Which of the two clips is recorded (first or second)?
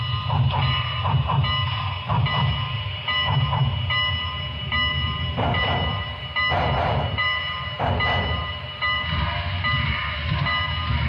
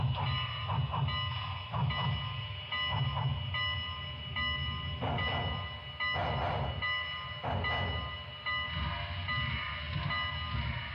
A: second